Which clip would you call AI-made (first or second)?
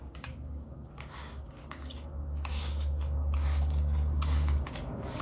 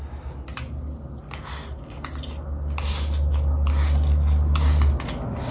first